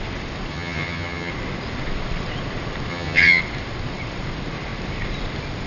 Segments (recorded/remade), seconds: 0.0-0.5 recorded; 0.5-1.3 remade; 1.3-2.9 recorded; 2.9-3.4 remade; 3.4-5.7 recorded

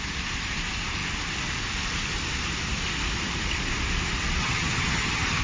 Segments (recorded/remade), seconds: 0.0-4.4 recorded; 4.4-5.4 remade